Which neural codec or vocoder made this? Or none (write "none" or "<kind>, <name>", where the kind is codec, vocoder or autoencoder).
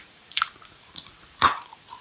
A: vocoder, Vocos